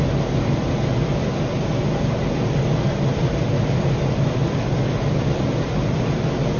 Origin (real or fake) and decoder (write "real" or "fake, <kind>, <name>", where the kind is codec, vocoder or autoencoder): real